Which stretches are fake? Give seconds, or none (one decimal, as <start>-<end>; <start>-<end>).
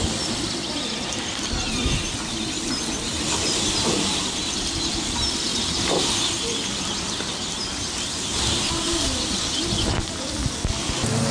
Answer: 5.5-8.7